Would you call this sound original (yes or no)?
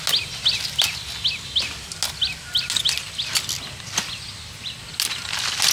yes